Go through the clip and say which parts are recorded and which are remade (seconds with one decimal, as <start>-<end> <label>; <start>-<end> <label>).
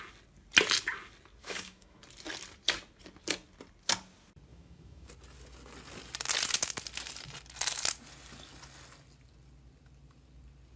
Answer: 0.0-1.4 recorded; 1.4-2.0 remade; 2.0-4.5 recorded; 4.5-5.1 remade; 5.1-10.8 recorded